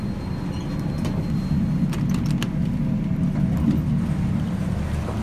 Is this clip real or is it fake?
real